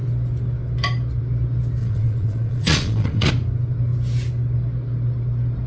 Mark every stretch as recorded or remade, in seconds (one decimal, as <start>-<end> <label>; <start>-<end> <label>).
0.0-1.8 recorded; 1.8-3.3 remade; 3.3-5.7 recorded